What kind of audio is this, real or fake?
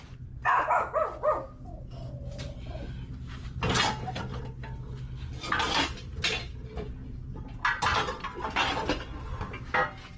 real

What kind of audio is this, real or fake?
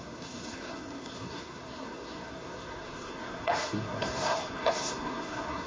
fake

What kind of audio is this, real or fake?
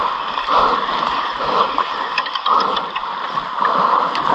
real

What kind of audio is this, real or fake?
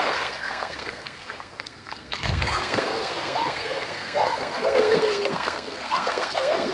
fake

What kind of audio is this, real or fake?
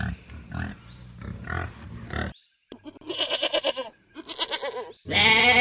real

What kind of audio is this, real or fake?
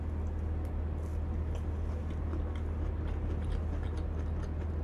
real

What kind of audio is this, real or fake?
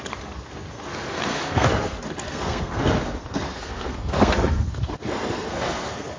fake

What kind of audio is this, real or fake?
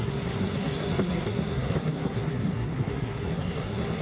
fake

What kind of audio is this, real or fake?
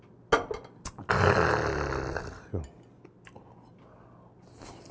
real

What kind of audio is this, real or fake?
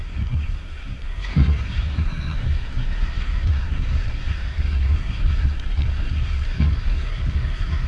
fake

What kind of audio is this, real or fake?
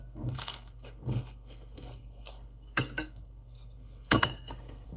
fake